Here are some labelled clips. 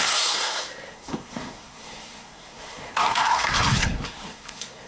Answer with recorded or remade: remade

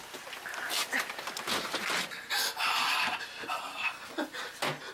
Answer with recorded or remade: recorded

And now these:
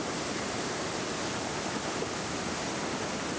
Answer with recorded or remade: recorded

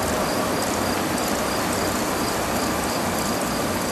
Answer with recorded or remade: recorded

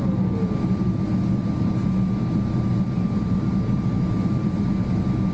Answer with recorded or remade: recorded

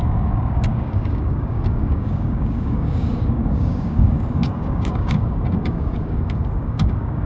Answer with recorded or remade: remade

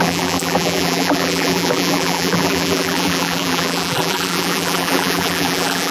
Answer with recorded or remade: remade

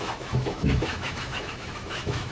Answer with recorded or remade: remade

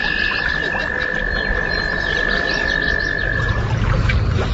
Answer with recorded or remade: recorded